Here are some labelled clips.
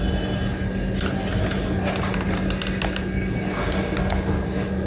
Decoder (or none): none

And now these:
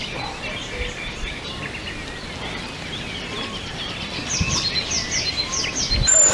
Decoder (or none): none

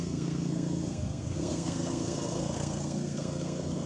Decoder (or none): codec, SNAC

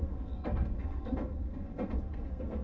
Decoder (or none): codec, SNAC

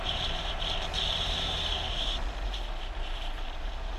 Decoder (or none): none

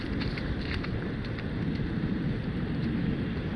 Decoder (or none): none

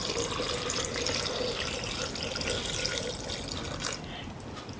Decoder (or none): none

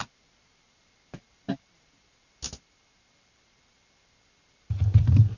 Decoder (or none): none